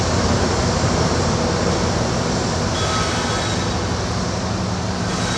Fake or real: real